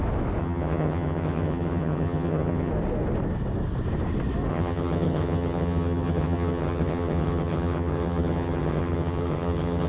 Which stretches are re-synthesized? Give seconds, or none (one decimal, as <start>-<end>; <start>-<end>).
0.4-2.7; 4.5-9.9